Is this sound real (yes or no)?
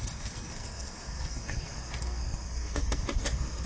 no